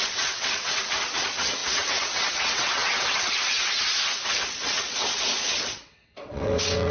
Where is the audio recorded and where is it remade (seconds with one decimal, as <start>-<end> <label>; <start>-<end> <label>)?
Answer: 0.0-6.9 remade